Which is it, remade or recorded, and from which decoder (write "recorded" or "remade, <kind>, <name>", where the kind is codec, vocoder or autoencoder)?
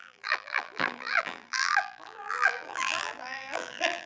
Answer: remade, vocoder, BigVGAN v2